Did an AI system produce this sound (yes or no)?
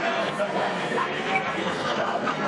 yes